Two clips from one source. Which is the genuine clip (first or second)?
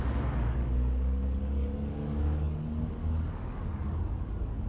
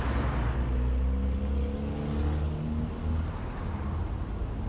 second